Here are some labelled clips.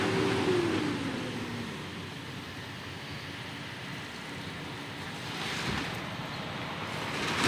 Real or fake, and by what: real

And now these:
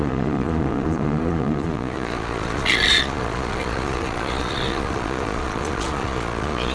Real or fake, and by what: fake, vocoder, Vocos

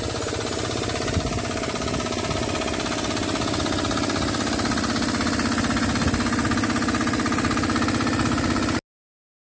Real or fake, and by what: real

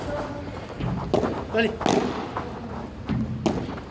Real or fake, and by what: real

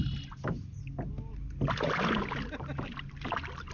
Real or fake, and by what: real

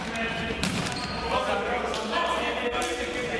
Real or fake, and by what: real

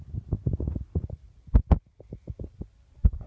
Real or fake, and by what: real